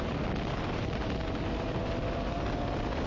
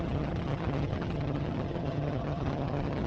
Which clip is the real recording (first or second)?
first